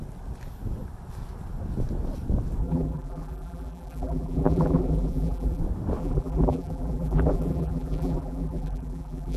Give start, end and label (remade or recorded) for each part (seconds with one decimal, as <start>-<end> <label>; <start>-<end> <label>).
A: 0.0-2.6 recorded; 2.6-5.6 remade; 5.6-6.0 recorded; 6.0-9.4 remade